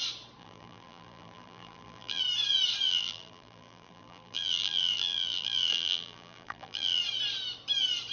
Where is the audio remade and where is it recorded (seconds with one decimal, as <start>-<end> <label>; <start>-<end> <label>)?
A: 0.0-0.4 recorded; 0.4-2.2 remade; 2.2-2.9 recorded; 2.9-7.0 remade; 7.0-8.1 recorded